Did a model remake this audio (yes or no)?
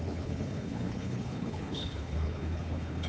yes